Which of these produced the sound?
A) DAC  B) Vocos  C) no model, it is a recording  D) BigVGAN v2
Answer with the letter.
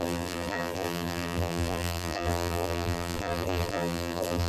D